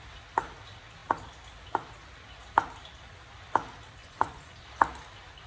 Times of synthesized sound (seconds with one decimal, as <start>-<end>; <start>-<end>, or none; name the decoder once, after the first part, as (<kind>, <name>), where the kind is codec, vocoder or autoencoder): 4.0-4.6 (vocoder, Vocos)